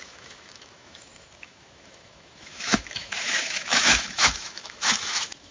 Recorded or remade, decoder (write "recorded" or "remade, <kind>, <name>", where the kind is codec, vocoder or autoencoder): remade, autoencoder, DAC-VAE